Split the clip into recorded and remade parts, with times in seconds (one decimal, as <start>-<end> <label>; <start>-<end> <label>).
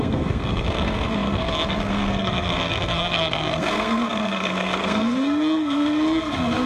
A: 0.0-6.7 remade